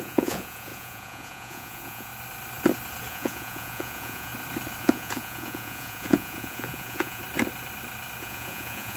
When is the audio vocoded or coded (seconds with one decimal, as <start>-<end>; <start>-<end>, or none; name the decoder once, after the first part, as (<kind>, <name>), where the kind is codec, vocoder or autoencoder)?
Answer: 0.0-2.1 (vocoder, Vocos); 3.1-4.3; 4.8-7.2; 8.2-9.0